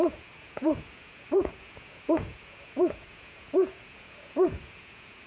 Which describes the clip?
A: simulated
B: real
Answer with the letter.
A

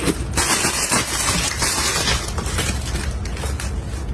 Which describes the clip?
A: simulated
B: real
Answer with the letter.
B